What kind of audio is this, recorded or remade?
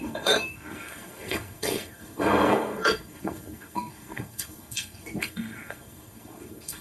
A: remade